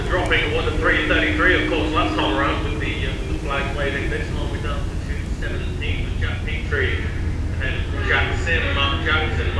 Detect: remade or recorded recorded